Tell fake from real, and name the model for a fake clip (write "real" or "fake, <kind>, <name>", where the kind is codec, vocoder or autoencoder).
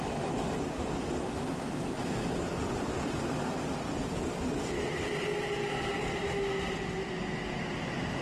real